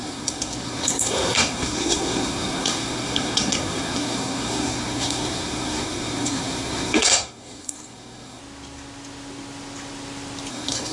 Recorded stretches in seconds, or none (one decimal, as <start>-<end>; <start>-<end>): 8.4-10.5